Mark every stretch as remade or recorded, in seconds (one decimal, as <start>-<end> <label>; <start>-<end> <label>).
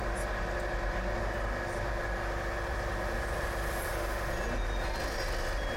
0.0-2.7 recorded; 2.7-3.9 remade; 3.9-5.8 recorded